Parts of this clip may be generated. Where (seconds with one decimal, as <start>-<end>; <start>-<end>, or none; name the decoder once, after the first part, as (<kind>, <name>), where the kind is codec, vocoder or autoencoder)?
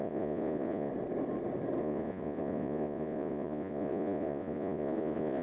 0.0-0.9 (vocoder, Vocos); 1.8-5.4